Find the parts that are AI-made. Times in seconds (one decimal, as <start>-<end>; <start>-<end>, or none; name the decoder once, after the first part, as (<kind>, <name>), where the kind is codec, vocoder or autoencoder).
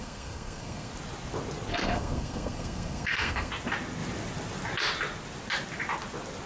0.0-0.9 (codec, SNAC); 1.7-3.5